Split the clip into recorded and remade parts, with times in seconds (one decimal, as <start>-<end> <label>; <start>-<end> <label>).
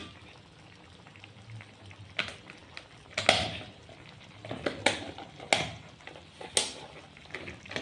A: 0.0-7.8 recorded